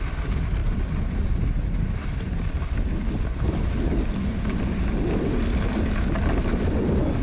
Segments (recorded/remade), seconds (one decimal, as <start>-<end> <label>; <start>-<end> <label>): 0.0-7.2 recorded